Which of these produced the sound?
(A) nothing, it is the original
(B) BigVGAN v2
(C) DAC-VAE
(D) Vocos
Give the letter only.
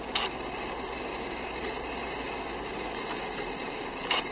A